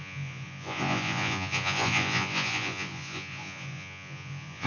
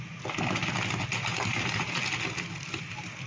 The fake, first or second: first